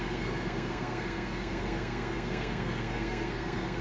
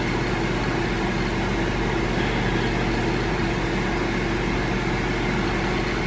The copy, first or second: first